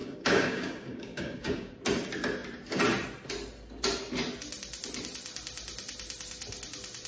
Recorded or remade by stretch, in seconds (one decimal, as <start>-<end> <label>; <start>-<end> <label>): 0.0-1.7 remade; 1.7-7.1 recorded